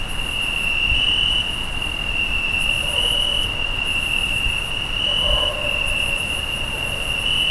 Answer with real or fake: real